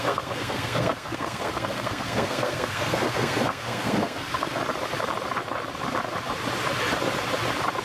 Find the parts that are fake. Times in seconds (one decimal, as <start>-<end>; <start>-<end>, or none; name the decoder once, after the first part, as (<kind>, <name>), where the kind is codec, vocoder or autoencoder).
0.0-4.6 (codec, SNAC)